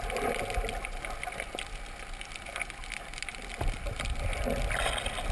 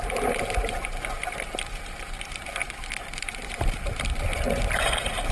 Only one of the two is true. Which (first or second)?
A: first